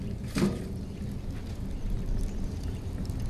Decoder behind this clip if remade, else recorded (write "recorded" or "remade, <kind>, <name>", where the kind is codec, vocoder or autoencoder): recorded